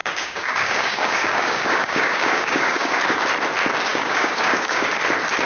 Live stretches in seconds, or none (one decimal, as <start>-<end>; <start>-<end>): 3.0-3.9; 4.9-5.5